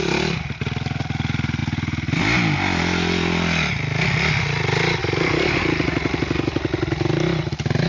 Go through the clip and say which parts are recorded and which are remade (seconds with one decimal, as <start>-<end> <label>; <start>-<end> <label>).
0.0-1.6 recorded; 1.6-2.2 remade; 2.2-5.0 recorded; 5.0-5.6 remade; 5.6-7.9 recorded